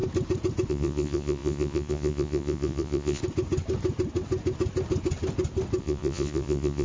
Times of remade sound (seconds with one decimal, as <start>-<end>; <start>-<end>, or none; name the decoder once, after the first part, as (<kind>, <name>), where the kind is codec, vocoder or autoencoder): 0.7-3.2 (vocoder, Vocos); 5.8-6.8